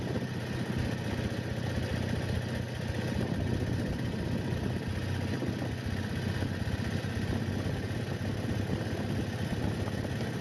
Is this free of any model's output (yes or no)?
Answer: yes